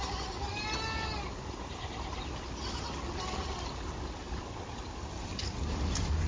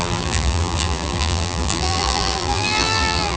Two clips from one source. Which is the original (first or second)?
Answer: first